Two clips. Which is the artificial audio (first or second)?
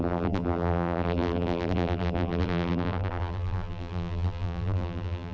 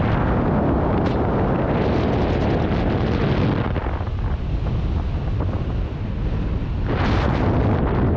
first